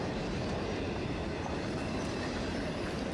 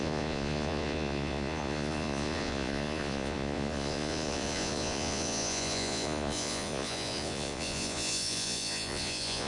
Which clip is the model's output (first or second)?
second